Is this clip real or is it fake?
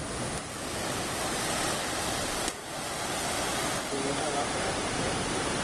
real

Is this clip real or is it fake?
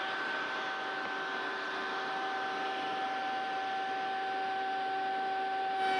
real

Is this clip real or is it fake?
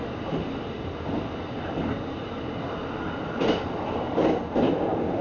real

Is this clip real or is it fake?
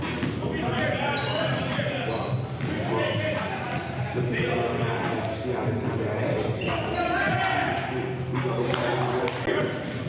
real